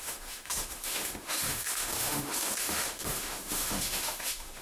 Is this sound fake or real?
fake